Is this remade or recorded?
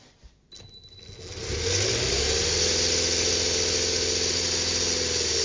recorded